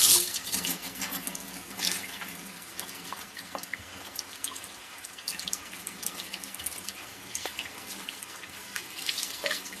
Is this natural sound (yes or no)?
no